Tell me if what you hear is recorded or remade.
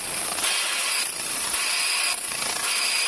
recorded